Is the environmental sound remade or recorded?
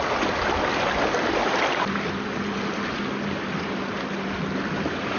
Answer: recorded